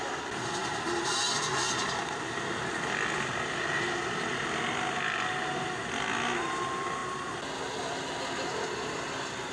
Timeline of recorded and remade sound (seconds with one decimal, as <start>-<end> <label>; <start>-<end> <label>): 0.0-9.5 recorded